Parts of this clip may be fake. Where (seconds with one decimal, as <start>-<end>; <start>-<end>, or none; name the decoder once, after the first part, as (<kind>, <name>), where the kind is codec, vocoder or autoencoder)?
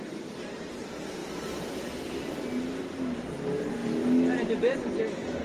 1.2-2.1 (vocoder, BigVGAN v2)